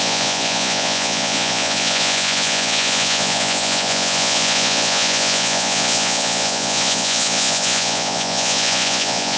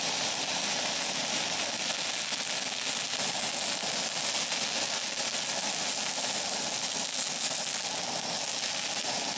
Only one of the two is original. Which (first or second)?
second